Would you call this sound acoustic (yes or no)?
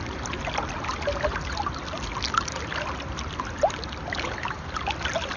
yes